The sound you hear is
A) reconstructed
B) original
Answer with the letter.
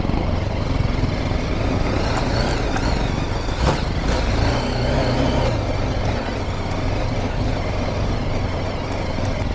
B